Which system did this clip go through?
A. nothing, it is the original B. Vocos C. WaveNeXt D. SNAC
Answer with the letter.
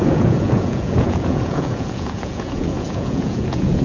B